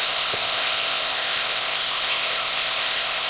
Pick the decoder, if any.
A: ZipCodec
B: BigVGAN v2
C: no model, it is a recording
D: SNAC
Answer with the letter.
A